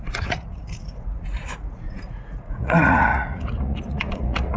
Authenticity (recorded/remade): remade